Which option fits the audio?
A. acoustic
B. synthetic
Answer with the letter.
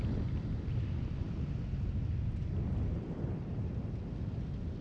A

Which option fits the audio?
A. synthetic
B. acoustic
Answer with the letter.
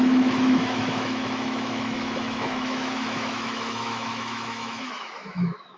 A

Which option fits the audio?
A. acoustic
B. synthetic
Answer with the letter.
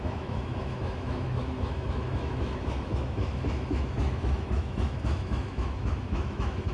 B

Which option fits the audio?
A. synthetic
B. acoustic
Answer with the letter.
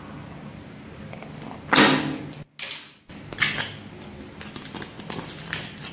B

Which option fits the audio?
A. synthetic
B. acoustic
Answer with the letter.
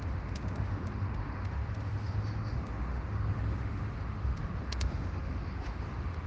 A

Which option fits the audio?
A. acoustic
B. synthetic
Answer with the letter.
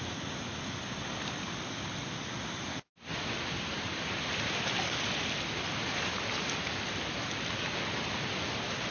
A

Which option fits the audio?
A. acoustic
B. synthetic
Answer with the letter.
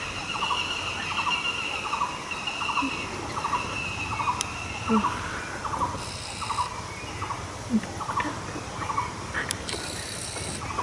A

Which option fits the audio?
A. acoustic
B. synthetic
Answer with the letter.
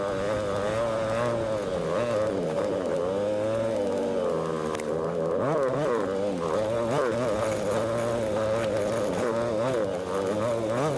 A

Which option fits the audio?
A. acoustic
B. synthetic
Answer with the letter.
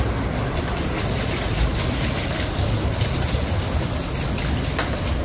A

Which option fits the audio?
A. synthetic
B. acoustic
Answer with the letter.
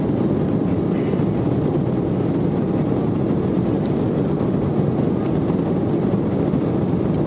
B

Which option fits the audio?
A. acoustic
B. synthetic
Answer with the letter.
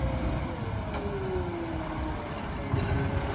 A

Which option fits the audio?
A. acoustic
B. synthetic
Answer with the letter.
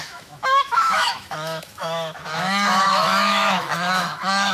B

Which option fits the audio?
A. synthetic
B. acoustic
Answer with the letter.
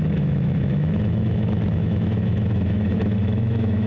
A